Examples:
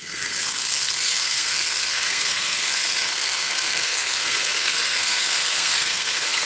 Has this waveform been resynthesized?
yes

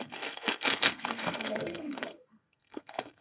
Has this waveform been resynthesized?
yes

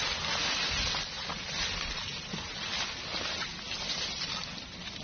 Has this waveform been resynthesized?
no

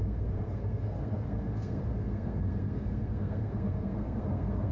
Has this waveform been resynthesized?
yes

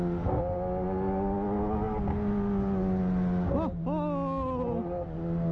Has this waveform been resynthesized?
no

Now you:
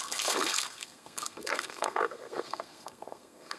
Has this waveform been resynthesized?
yes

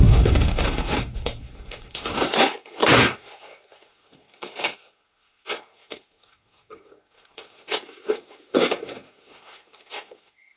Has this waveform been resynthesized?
yes